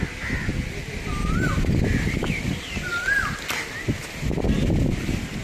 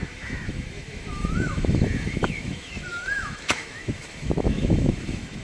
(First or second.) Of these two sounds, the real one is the first